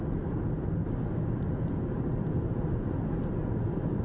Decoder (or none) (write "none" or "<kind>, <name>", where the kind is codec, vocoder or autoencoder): none